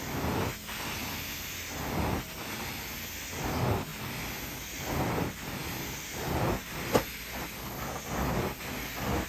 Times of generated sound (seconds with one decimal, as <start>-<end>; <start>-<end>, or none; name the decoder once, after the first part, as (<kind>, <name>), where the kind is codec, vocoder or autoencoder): none